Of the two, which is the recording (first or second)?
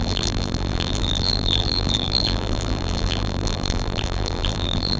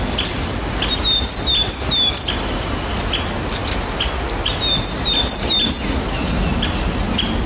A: second